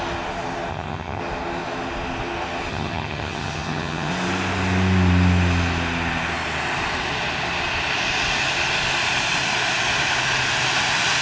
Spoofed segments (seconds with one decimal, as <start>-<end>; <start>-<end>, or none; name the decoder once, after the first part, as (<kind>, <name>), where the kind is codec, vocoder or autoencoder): 0.7-1.2 (vocoder, HiFi-GAN); 2.7-4.1